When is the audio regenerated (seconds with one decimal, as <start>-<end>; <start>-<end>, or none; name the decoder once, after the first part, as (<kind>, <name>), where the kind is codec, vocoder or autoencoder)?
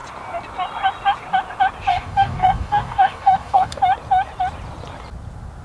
1.9-3.8 (codec, DAC)